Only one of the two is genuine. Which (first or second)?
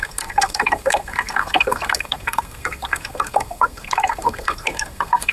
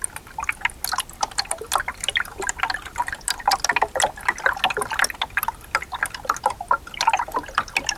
second